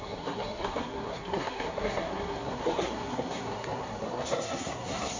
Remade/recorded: remade